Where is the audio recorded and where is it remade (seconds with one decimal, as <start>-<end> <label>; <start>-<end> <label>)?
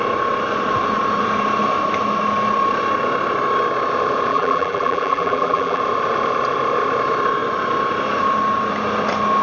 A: 0.0-4.3 recorded; 4.3-5.8 remade; 5.8-9.4 recorded